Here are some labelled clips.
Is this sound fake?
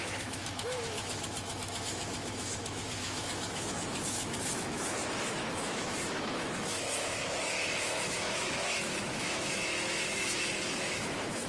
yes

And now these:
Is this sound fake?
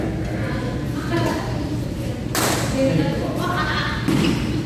no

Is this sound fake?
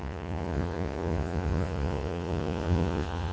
yes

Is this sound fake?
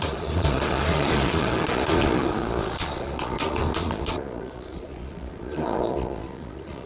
yes